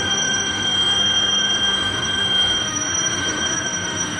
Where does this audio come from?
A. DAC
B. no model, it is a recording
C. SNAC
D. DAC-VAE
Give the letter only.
D